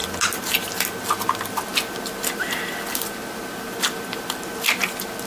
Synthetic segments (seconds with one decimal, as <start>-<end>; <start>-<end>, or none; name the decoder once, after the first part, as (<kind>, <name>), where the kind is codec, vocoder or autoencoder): none